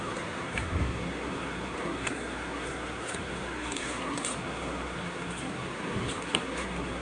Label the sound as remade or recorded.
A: remade